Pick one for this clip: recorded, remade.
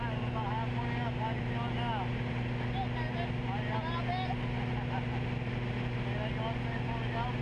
recorded